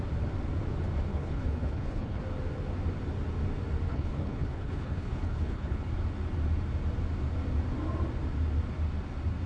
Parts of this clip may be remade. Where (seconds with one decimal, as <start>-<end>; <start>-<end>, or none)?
1.1-2.2; 3.9-5.9